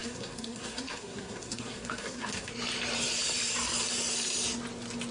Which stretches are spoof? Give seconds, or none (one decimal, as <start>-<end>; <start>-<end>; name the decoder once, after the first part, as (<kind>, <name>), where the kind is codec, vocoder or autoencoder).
0.0-2.5 (codec, SNAC)